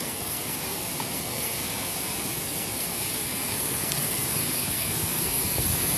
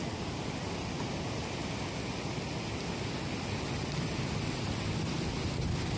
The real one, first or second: second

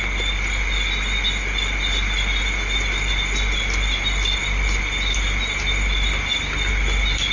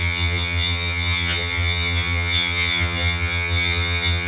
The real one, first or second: first